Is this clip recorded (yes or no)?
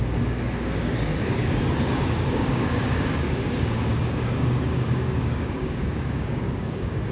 no